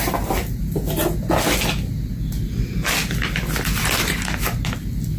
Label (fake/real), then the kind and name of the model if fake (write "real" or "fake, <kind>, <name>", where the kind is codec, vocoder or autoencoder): real